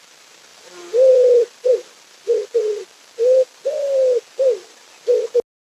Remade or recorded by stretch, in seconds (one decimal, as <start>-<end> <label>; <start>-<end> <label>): 0.0-5.7 recorded